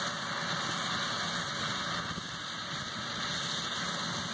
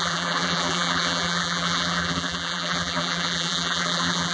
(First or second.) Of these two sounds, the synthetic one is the second